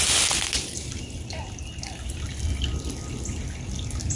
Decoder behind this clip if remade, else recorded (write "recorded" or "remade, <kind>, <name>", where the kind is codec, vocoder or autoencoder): recorded